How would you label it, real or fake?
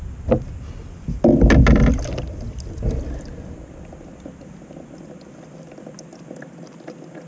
real